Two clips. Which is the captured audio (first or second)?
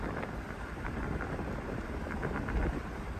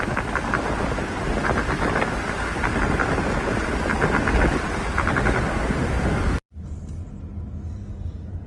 second